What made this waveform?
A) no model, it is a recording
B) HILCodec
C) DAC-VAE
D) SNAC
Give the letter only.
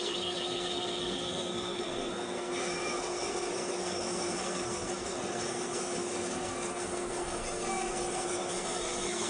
D